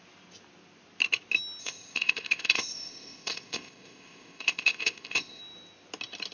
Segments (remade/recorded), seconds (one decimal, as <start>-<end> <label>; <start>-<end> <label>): 0.0-1.6 recorded; 1.6-5.4 remade; 5.4-6.3 recorded